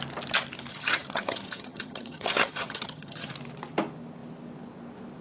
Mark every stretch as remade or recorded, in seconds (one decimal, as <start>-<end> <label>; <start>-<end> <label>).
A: 0.0-0.7 recorded; 0.7-3.3 remade; 3.3-5.2 recorded